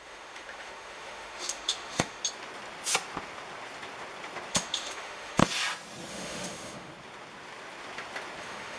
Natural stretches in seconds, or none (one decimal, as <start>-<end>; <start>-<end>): 2.2-4.5; 5.4-6.1; 6.9-8.4